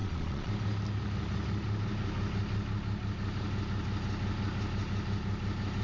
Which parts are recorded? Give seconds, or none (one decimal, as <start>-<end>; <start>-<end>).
0.5-5.8